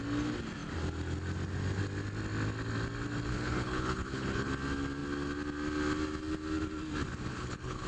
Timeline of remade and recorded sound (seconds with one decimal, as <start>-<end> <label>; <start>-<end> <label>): 0.0-3.3 recorded; 3.3-4.5 remade; 4.5-7.3 recorded; 7.3-7.9 remade

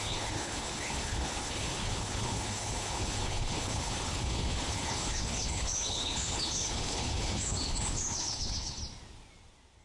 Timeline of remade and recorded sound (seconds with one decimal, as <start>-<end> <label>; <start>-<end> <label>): 0.0-8.8 remade; 8.8-9.8 recorded

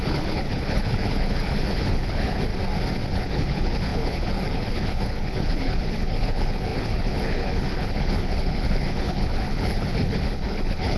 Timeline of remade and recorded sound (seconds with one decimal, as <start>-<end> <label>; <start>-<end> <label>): 0.0-2.5 remade; 2.5-3.1 recorded; 3.1-11.0 remade

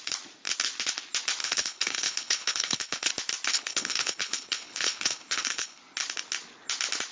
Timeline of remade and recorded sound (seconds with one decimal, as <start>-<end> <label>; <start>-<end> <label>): 0.0-1.4 recorded; 1.4-3.1 remade; 3.1-3.5 recorded; 3.5-5.8 remade; 5.8-7.1 recorded

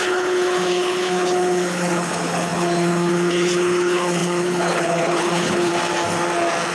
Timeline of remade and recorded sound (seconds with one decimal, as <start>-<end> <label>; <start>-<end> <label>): 0.0-5.7 remade; 5.7-6.7 recorded

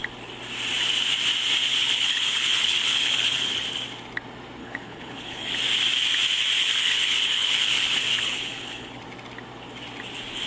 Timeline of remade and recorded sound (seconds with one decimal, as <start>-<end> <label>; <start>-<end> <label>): 0.0-1.7 recorded; 1.7-3.6 remade; 3.6-4.6 recorded; 4.6-5.5 remade; 5.5-6.6 recorded; 6.6-9.0 remade; 9.0-10.5 recorded

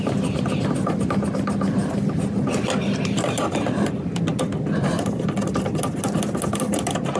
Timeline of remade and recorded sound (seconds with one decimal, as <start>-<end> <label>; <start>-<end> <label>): 0.0-7.2 recorded